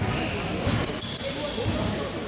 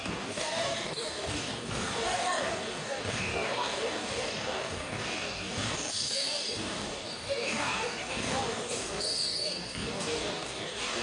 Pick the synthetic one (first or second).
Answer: second